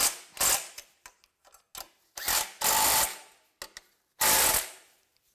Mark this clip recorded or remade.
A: recorded